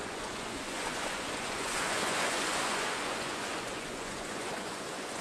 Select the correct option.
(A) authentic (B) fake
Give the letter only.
B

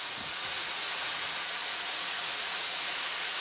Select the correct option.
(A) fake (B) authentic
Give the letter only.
A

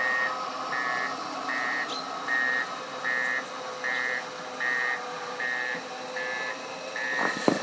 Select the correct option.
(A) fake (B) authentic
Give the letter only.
B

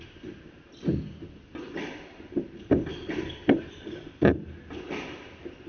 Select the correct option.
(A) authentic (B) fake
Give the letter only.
A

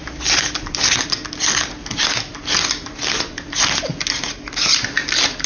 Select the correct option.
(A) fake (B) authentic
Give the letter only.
B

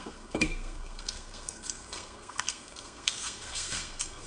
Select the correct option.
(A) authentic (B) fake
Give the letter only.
B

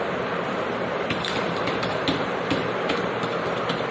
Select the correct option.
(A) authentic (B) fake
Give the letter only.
B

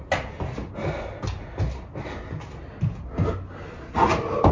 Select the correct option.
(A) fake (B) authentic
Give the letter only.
B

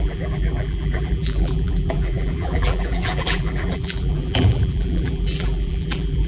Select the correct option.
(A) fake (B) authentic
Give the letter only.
A